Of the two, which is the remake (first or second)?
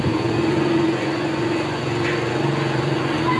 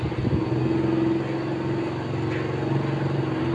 first